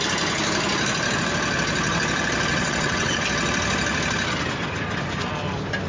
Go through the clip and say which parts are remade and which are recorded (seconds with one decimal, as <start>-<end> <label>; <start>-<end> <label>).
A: 0.0-2.5 recorded; 2.5-3.2 remade; 3.2-5.9 recorded